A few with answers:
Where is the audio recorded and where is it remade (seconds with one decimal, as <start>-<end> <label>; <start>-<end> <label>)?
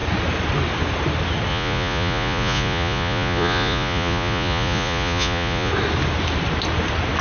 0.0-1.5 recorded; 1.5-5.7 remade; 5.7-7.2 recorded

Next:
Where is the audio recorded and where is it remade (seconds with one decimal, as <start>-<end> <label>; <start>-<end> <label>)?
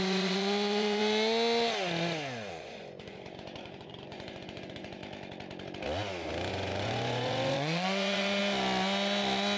0.0-1.0 remade; 1.0-2.5 recorded; 2.5-5.0 remade; 5.0-6.5 recorded; 6.5-8.4 remade; 8.4-9.6 recorded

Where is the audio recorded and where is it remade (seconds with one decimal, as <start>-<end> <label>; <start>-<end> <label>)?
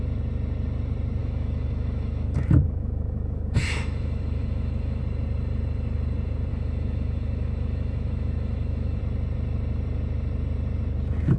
0.0-1.2 recorded; 1.2-5.0 remade; 5.0-6.5 recorded; 6.5-9.0 remade; 9.0-11.4 recorded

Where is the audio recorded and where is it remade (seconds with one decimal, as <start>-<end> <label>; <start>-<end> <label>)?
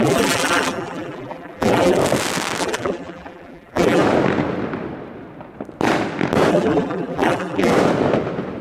0.0-2.0 remade; 2.0-2.6 recorded; 2.6-4.0 remade; 4.0-6.5 recorded; 6.5-7.7 remade; 7.7-8.6 recorded